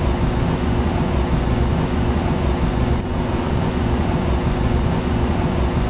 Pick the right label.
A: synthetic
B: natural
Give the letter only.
A